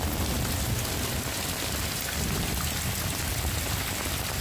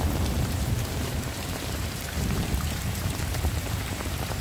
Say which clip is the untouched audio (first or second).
first